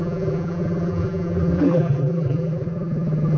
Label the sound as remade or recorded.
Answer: remade